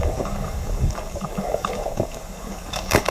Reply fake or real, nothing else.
fake